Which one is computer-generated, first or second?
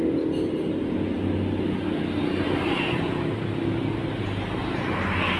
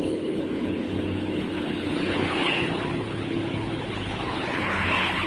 second